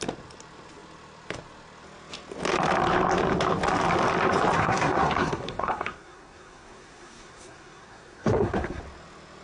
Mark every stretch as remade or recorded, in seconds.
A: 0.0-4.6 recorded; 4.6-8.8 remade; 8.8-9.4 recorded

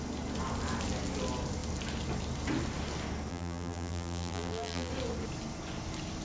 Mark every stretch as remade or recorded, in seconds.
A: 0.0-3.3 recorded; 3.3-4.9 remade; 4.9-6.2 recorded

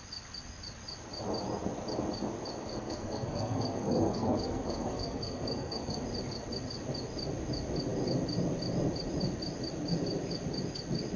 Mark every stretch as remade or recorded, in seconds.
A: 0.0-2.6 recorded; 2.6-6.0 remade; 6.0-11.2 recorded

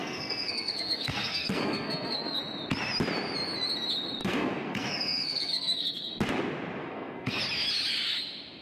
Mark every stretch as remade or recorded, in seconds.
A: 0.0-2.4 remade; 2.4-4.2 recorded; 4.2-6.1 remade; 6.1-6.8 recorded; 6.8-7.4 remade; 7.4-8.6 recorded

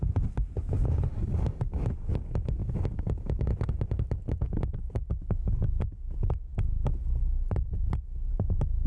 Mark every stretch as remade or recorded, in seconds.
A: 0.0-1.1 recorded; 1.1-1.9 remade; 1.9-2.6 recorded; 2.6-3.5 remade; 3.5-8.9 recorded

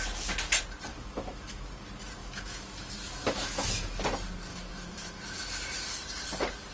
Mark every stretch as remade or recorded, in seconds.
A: 0.0-0.9 recorded; 0.9-1.7 remade; 1.7-2.2 recorded; 2.2-4.0 remade; 4.0-4.5 recorded; 4.5-5.2 remade; 5.2-6.7 recorded

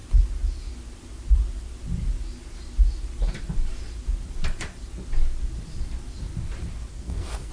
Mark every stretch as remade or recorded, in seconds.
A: 0.0-6.9 recorded; 6.9-7.5 remade